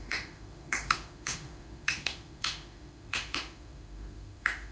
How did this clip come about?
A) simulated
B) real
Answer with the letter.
A